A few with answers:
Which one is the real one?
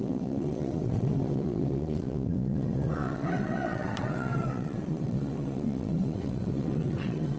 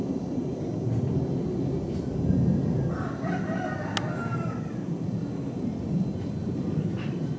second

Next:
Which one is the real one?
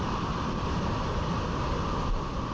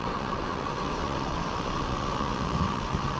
first